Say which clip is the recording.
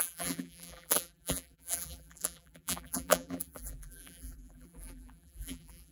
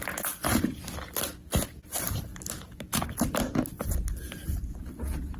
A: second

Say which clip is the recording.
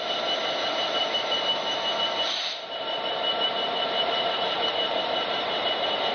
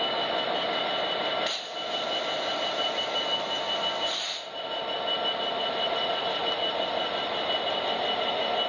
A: second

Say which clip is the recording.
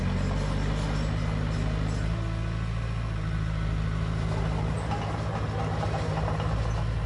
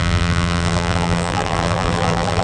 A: first